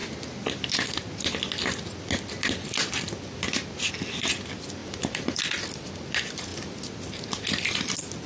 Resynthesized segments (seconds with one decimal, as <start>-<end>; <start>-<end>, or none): 4.8-5.4